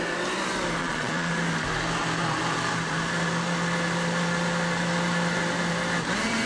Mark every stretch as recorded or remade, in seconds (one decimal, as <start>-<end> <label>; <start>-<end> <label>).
0.0-0.8 recorded; 0.8-1.3 remade; 1.3-6.5 recorded